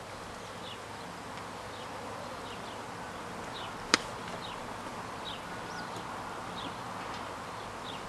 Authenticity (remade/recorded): recorded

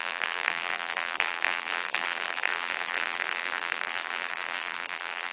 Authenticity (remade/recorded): remade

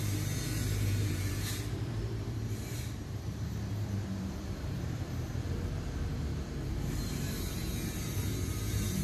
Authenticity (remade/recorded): remade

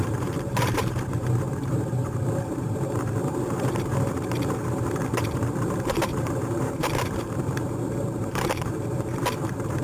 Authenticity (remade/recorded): remade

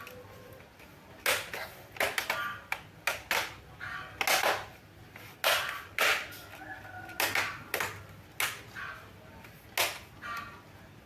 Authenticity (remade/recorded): recorded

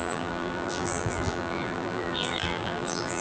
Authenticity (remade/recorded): remade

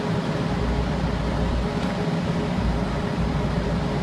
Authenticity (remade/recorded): remade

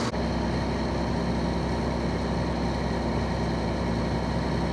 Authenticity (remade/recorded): recorded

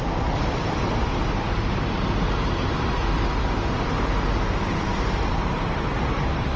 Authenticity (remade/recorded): remade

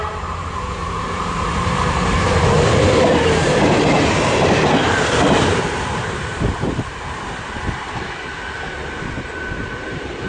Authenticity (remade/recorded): remade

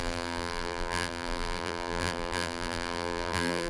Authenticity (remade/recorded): remade